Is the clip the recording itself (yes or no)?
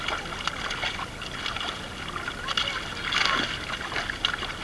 yes